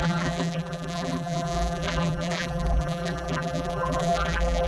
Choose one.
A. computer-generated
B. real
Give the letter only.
A